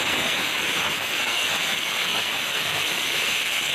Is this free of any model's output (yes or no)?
no